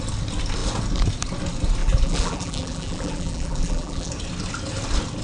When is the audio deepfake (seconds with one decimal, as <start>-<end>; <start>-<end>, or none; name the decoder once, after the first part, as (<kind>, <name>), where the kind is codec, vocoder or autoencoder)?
1.8-4.1 (vocoder, BigVGAN v2)